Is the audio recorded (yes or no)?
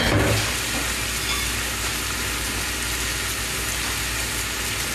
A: yes